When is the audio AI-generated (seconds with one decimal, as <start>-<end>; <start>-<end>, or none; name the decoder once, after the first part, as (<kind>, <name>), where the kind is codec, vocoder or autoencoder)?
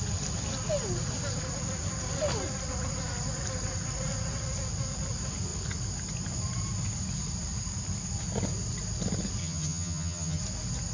9.4-10.4 (vocoder, HiFi-GAN)